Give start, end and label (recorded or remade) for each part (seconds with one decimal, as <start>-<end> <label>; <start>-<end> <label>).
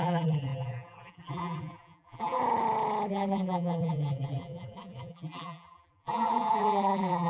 0.0-2.4 remade; 2.4-3.1 recorded; 3.1-7.3 remade